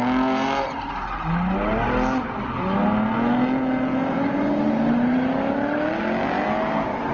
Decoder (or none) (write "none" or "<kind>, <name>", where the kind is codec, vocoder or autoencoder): none